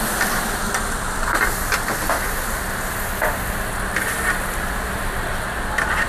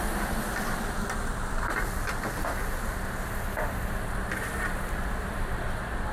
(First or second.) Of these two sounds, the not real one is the second